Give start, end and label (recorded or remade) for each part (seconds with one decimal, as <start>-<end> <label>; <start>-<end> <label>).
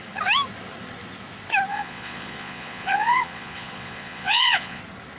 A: 0.0-1.7 recorded; 1.7-4.8 remade; 4.8-5.2 recorded